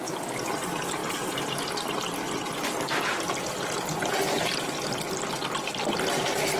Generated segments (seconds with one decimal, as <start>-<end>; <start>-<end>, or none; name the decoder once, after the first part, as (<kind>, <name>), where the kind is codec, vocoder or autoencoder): none